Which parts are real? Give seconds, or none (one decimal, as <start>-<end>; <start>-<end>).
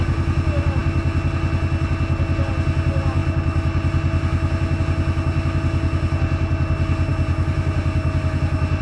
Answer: 0.0-8.8